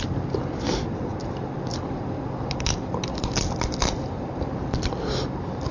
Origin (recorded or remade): recorded